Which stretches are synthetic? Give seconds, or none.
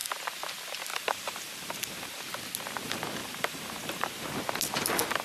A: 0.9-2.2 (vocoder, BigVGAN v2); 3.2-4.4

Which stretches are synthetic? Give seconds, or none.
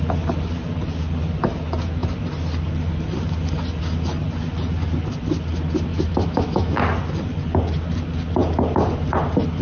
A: 5.9-6.8 (autoencoder, DAC-VAE)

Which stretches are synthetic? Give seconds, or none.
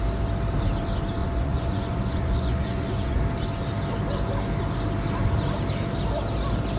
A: 1.2-3.2 (vocoder, Vocos)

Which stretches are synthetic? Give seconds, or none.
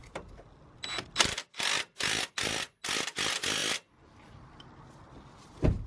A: none